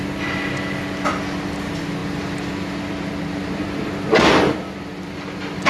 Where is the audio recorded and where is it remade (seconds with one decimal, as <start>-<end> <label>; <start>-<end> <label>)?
0.0-2.0 recorded; 2.0-3.1 remade; 3.1-5.7 recorded